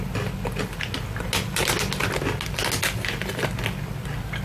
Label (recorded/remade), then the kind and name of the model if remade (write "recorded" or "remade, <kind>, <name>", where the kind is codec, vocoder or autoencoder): recorded